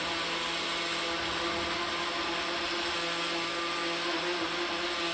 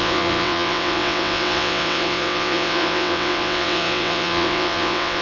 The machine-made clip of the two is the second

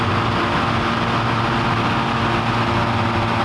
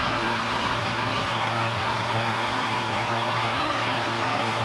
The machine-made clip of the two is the second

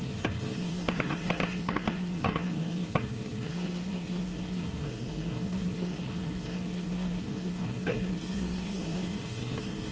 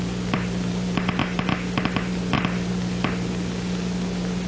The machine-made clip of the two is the first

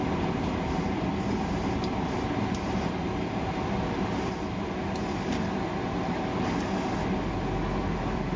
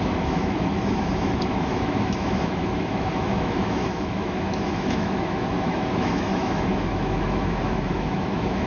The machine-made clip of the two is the second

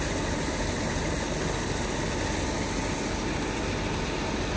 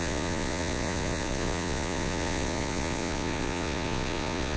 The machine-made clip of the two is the second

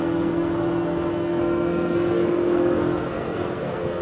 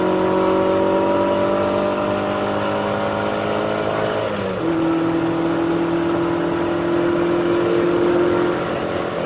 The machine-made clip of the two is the first